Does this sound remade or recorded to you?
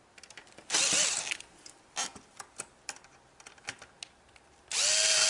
recorded